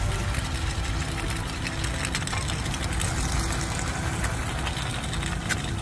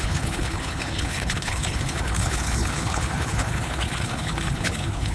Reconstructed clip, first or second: second